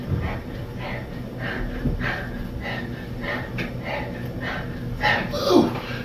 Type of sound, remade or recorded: recorded